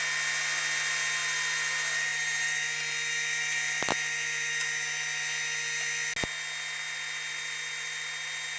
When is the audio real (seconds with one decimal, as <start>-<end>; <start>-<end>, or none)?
0.0-8.6